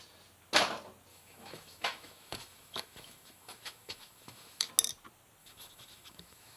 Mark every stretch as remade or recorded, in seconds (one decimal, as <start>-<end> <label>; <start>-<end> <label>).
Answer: 0.0-1.1 recorded; 1.1-4.7 remade; 4.7-5.4 recorded; 5.4-6.6 remade